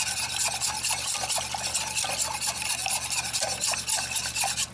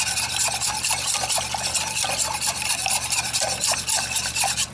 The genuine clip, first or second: first